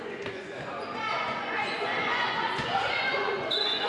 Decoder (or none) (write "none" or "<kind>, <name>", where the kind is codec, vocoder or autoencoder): vocoder, Vocos